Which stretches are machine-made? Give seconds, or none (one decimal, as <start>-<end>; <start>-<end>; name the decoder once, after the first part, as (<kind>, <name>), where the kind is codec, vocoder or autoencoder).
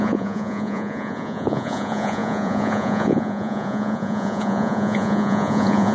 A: 0.0-5.9 (vocoder, Vocos)